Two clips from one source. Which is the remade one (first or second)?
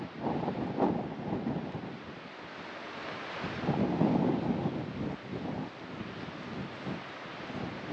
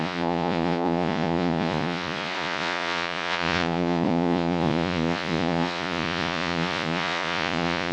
second